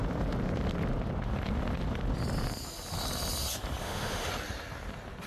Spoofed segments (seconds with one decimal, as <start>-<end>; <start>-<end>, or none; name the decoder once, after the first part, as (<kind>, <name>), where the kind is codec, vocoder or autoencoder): 3.8-4.3 (autoencoder, DAC-VAE)